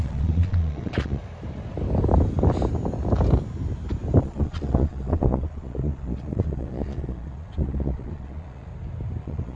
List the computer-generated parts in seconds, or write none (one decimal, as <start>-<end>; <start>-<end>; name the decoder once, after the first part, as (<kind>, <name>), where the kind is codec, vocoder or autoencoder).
0.0-1.2 (vocoder, Vocos); 4.2-8.7; 9.2-9.6